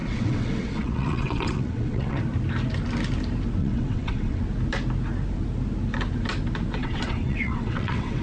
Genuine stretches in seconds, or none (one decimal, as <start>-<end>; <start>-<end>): 2.2-3.6; 4.4-6.8